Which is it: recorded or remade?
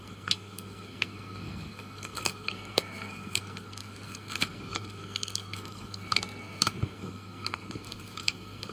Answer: remade